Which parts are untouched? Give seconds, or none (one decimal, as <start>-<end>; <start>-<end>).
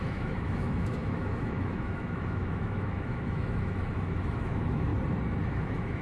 4.9-5.5